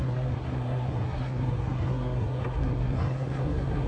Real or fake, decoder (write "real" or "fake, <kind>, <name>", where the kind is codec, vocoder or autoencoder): fake, codec, SNAC